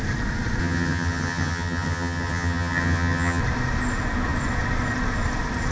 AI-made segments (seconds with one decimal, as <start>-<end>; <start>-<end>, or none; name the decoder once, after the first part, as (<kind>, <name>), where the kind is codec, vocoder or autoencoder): 0.6-3.4 (vocoder, HiFi-GAN)